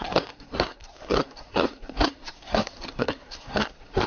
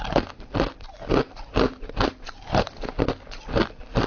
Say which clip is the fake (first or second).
first